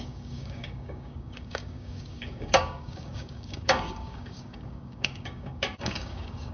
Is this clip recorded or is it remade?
remade